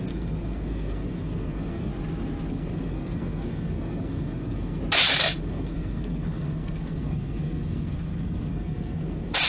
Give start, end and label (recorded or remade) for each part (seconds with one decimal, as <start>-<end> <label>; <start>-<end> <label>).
0.0-1.9 remade; 1.9-2.5 recorded; 2.5-4.8 remade; 4.8-5.4 recorded; 5.4-9.5 remade